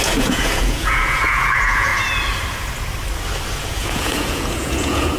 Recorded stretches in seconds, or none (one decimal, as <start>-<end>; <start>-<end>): 1.9-3.6